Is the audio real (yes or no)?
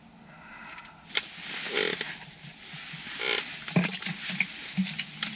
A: yes